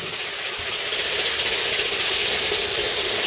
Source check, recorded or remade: recorded